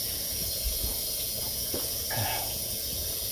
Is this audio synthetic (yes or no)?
yes